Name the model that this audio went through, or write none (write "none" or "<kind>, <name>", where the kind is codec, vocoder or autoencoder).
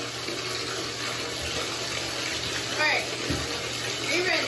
none